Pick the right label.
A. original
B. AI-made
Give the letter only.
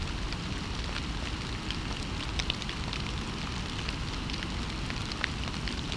A